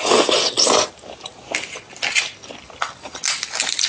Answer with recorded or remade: recorded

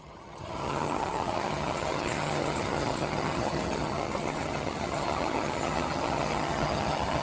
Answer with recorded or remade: remade